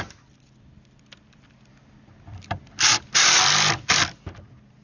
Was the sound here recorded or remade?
recorded